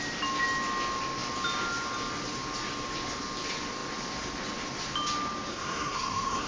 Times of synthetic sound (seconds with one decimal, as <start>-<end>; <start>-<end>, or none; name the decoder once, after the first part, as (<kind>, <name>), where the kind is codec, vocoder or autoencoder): 5.5-6.5 (codec, SNAC)